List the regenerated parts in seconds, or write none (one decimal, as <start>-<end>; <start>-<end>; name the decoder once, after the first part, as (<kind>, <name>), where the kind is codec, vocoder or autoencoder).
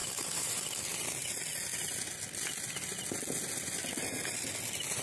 0.0-0.6 (vocoder, BigVGAN v2)